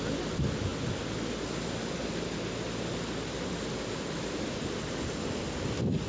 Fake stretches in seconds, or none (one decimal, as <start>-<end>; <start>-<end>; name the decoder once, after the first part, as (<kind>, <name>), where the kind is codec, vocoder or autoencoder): none